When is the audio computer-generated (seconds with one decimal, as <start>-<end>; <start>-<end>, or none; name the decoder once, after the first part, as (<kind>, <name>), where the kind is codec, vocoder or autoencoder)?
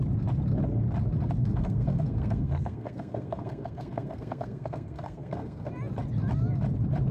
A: 1.4-5.7 (codec, SNAC)